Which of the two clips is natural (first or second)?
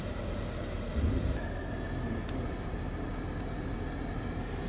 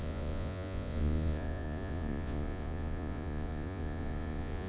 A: first